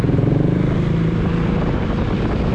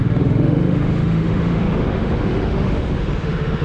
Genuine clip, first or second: first